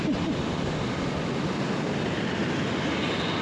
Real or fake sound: real